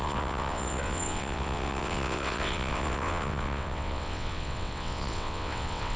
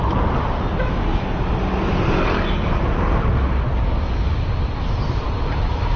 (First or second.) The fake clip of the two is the first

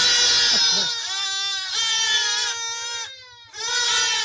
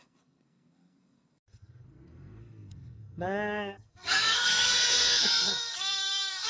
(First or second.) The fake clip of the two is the second